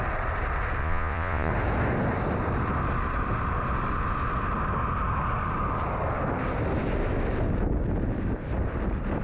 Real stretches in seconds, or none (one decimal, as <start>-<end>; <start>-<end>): 0.0-0.8; 1.5-9.2